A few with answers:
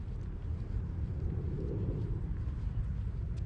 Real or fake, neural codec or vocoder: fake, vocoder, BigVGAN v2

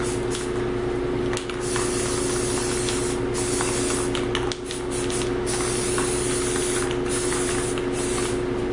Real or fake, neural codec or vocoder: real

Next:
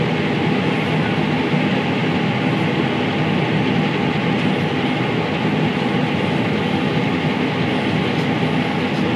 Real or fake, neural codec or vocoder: real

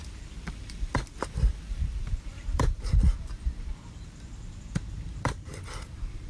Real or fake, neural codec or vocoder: fake, vocoder, BigVGAN v2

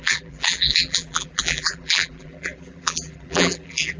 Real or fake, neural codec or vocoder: fake, vocoder, BigVGAN v2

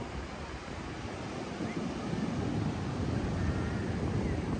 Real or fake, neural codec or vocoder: real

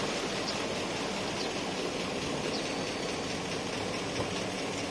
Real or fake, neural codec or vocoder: real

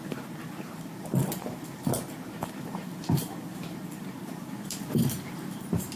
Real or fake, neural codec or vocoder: fake, vocoder, BigVGAN v2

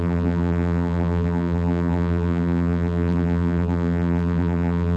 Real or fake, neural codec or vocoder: fake, vocoder, BigVGAN v2